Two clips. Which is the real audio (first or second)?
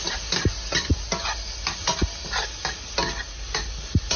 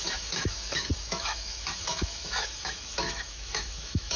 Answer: first